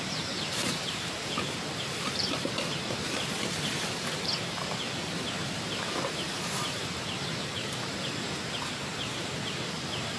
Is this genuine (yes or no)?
no